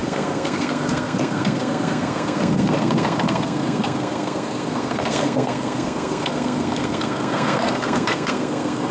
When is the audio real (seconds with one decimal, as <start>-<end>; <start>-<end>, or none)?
none